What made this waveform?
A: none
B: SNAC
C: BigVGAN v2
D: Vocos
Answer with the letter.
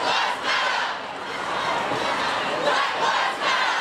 A